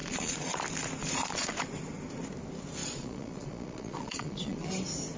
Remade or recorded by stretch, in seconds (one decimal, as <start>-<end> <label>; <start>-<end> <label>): 0.0-0.5 remade; 0.5-1.0 recorded; 1.0-1.6 remade; 1.6-2.8 recorded; 2.8-4.7 remade; 4.7-5.2 recorded